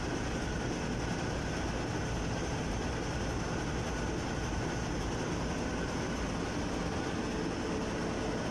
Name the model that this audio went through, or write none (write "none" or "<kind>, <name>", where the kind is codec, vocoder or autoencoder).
none